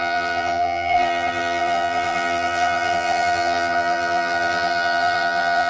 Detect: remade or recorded remade